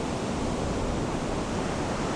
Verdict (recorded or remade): recorded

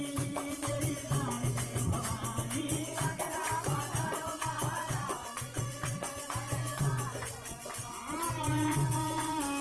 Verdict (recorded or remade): remade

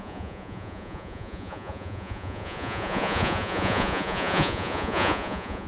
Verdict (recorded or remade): remade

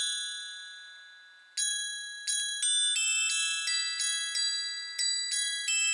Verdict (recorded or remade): recorded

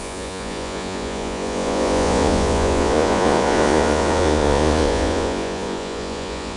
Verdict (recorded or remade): remade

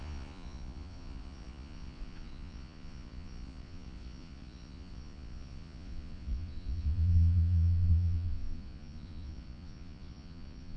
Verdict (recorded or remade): remade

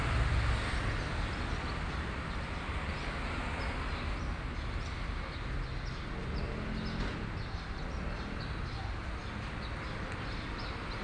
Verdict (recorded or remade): recorded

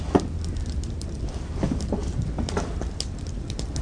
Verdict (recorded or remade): recorded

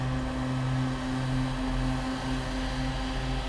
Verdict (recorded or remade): recorded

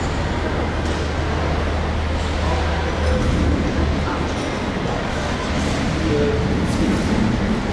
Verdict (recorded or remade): recorded